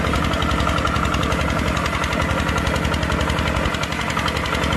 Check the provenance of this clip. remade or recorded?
recorded